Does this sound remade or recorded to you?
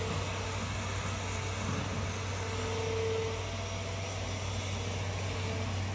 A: recorded